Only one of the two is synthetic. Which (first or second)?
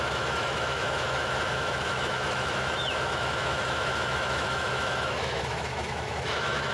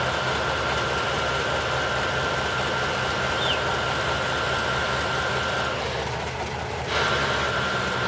first